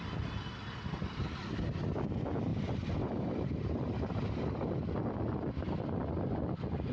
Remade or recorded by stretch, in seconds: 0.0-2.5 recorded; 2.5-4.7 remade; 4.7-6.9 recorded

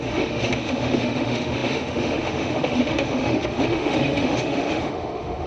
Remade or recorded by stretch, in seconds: 0.0-5.5 remade